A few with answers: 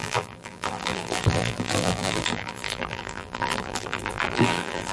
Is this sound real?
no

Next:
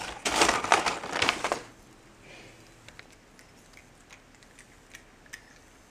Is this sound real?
yes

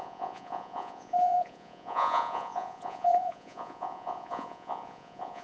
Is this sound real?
no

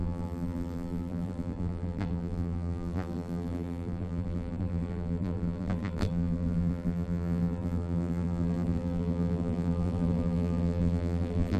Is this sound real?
no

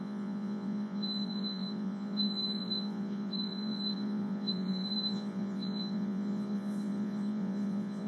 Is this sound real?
no